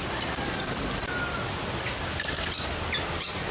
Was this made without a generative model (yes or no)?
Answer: yes